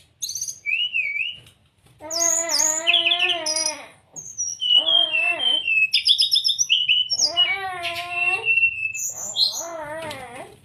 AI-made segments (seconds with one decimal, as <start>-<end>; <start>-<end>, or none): none